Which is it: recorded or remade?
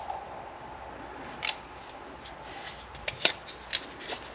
recorded